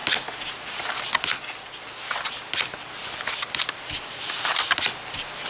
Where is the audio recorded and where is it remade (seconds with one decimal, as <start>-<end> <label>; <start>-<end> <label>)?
0.0-5.5 recorded